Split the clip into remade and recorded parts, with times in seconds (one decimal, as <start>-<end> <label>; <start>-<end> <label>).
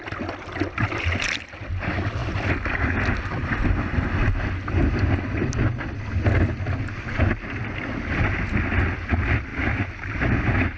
0.0-10.8 recorded